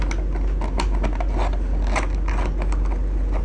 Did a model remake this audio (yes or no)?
no